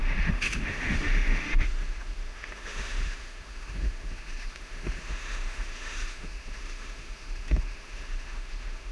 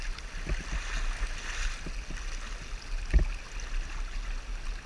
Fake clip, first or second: first